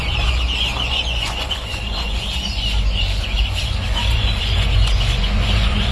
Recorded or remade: remade